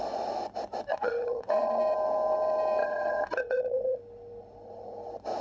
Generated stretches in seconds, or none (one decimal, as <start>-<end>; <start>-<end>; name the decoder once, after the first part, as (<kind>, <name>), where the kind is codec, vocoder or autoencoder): 0.9-1.7 (vocoder, WaveNeXt); 2.8-4.0